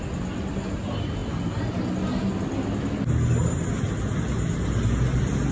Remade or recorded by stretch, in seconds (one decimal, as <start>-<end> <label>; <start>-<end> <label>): 0.0-5.5 recorded